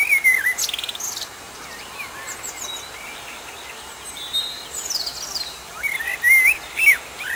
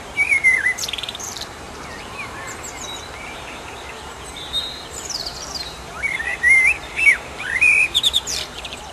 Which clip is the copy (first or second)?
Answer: second